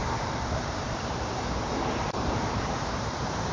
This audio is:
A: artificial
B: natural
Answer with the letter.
A